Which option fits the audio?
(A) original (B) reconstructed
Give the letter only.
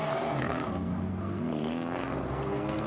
B